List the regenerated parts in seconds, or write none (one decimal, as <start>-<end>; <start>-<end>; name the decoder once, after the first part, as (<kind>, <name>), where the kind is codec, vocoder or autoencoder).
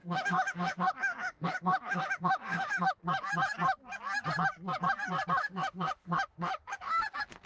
0.0-3.0 (autoencoder, DAC-VAE); 5.4-7.0